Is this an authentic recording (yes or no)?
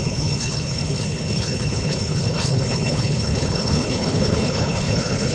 no